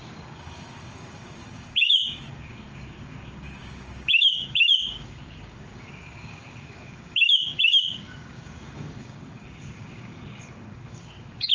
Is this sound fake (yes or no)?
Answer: yes